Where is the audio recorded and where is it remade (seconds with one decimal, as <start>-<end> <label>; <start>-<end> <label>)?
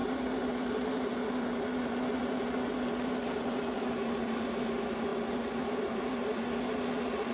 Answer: 0.0-7.3 recorded